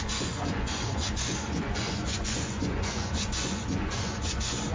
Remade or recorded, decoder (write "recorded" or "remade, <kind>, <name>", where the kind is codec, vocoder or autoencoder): remade, vocoder, Vocos